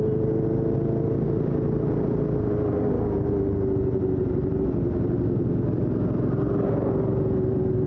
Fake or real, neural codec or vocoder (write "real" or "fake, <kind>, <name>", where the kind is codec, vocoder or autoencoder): real